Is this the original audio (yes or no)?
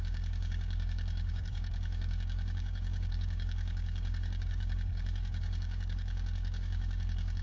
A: no